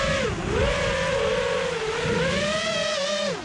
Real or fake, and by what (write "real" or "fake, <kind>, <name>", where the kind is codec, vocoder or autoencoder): real